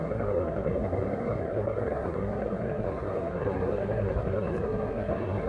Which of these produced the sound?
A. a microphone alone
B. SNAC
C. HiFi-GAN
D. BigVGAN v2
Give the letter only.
B